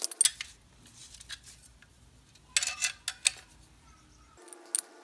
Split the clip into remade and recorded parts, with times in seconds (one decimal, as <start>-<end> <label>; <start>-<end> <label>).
0.0-5.0 recorded

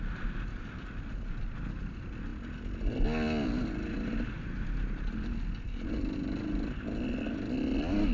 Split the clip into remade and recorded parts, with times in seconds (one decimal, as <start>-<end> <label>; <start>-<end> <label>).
0.0-8.1 recorded

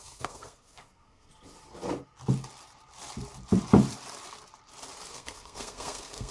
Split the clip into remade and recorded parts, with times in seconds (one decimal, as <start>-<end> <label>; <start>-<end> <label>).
0.0-1.3 remade; 1.3-5.1 recorded; 5.1-6.3 remade

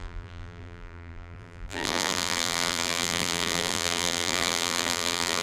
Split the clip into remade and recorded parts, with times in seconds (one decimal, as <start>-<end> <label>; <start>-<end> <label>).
0.0-5.4 remade

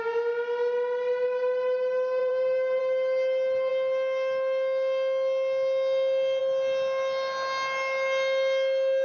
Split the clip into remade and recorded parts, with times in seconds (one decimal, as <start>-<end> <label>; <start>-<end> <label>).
0.0-2.2 recorded; 2.2-2.8 remade; 2.8-9.0 recorded

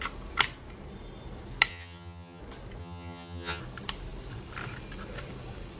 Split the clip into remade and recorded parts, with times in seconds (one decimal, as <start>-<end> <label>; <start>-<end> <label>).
0.0-1.7 recorded; 1.7-2.4 remade; 2.4-2.8 recorded; 2.8-3.6 remade; 3.6-5.8 recorded